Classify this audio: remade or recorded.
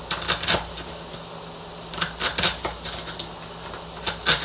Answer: recorded